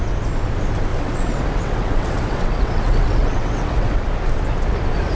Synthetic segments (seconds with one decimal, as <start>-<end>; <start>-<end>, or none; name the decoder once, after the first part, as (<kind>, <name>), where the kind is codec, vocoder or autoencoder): 0.9-4.0 (vocoder, WaveNeXt)